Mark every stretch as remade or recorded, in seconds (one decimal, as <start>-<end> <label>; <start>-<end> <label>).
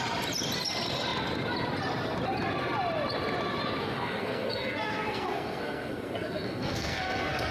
0.0-3.8 recorded; 3.8-7.5 remade